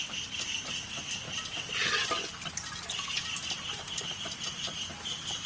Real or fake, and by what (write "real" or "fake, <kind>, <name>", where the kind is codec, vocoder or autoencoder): real